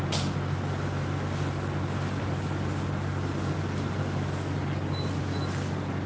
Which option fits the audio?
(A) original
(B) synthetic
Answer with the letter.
A